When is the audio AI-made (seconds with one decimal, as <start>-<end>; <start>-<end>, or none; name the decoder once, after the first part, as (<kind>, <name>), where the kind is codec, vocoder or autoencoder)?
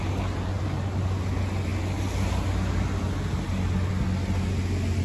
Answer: none